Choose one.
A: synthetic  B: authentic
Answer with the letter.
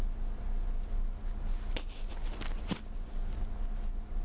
B